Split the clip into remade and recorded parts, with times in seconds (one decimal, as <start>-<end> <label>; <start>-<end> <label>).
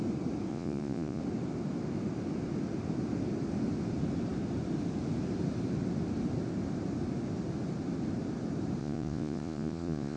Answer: 0.0-0.5 recorded; 0.5-1.2 remade; 1.2-8.8 recorded; 8.8-10.2 remade